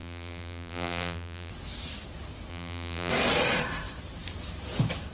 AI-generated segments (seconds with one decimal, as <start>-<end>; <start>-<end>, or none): 0.0-1.5; 2.5-3.1